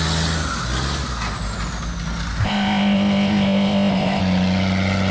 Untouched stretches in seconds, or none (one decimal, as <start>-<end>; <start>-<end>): 0.0-2.4; 4.2-5.1